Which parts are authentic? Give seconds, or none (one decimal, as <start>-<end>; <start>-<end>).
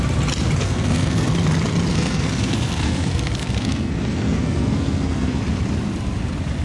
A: 0.0-0.6; 1.3-1.9; 5.4-6.6